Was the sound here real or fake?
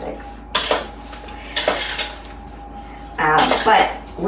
real